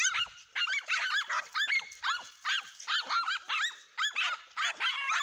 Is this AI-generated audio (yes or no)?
no